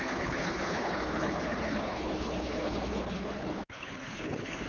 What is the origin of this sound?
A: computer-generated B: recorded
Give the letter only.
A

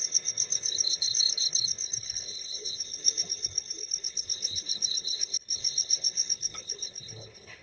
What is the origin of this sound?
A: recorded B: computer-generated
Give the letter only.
B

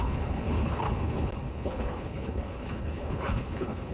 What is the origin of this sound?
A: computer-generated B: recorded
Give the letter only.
A